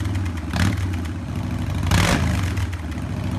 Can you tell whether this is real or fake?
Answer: real